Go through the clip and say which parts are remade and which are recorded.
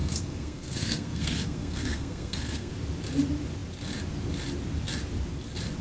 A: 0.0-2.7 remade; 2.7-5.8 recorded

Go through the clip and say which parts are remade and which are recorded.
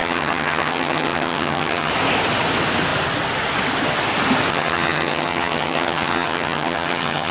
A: 0.0-1.9 remade; 1.9-4.5 recorded; 4.5-7.3 remade